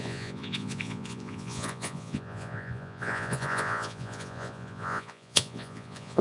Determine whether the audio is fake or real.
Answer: fake